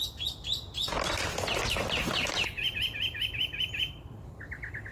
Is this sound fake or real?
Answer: real